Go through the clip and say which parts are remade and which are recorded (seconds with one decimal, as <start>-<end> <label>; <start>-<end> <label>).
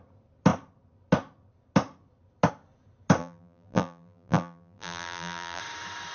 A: 0.0-3.2 recorded; 3.2-5.6 remade; 5.6-6.1 recorded